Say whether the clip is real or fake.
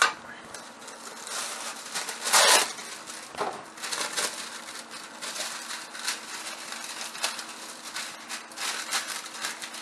real